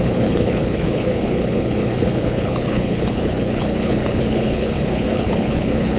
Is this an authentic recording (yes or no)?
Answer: no